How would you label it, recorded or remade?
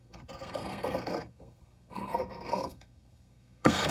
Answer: remade